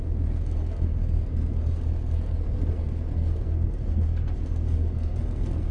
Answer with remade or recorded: remade